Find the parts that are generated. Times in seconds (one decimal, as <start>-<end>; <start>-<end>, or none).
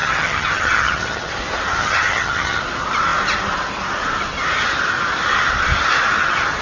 0.0-1.3; 1.8-2.6